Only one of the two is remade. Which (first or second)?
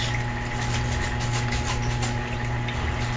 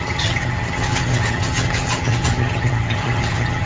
second